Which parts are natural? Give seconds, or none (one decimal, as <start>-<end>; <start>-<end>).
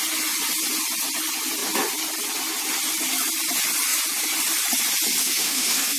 0.0-5.2